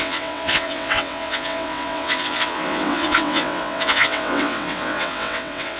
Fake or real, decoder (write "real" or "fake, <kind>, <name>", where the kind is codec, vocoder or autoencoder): fake, vocoder, WaveNeXt